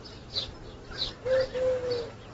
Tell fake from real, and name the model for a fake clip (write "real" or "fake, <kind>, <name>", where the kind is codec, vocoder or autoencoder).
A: real